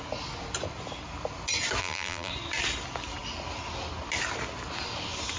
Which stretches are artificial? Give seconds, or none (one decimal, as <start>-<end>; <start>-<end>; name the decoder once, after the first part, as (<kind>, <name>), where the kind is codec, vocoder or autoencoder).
1.8-2.3 (vocoder, BigVGAN v2)